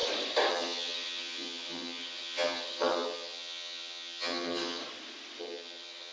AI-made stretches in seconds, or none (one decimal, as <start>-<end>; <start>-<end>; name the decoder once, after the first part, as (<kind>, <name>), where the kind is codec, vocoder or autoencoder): 0.5-4.8 (vocoder, HiFi-GAN); 5.4-6.1